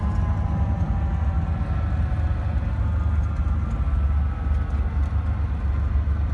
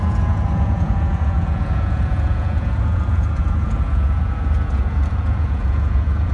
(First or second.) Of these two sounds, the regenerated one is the second